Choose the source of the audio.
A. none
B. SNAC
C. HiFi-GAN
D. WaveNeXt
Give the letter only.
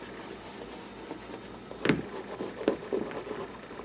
A